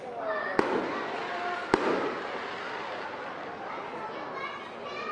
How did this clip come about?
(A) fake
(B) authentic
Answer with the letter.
B